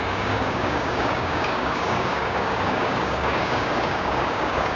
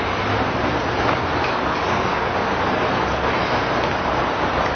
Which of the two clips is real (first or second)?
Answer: second